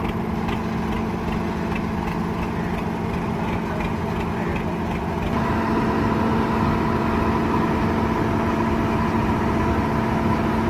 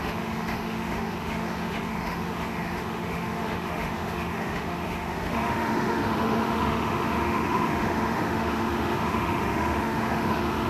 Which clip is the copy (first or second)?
second